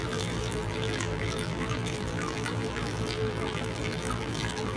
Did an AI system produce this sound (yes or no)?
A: yes